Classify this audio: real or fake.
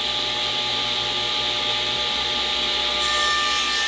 real